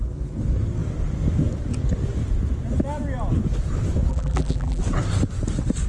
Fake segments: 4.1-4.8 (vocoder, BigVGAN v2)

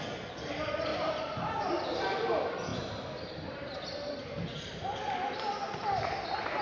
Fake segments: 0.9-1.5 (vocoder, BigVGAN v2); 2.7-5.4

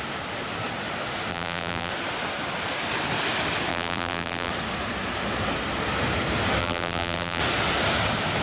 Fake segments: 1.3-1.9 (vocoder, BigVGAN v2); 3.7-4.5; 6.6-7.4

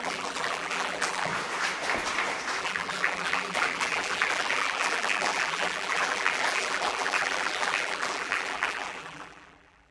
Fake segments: 0.0-1.3 (vocoder, BigVGAN v2); 2.6-9.9

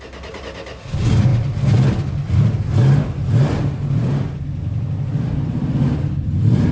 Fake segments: none

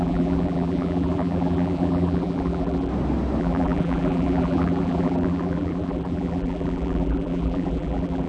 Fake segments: 0.0-2.9 (vocoder, BigVGAN v2); 3.4-8.3

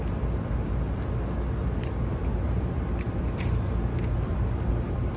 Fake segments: 1.6-4.7 (vocoder, BigVGAN v2)

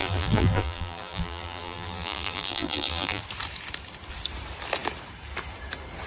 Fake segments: 0.0-3.2 (vocoder, BigVGAN v2)